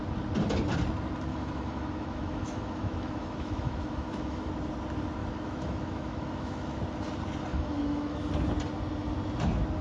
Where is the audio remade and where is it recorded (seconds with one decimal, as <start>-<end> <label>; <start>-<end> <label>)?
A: 0.0-1.3 recorded; 1.3-4.5 remade; 4.5-5.2 recorded; 5.2-6.8 remade; 6.8-7.5 recorded; 7.5-8.3 remade; 8.3-9.8 recorded